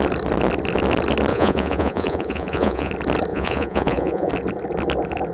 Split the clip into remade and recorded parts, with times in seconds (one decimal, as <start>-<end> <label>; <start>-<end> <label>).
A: 0.0-1.3 recorded; 1.3-2.9 remade; 2.9-3.3 recorded; 3.3-4.3 remade; 4.3-5.3 recorded